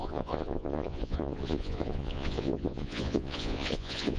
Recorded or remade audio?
remade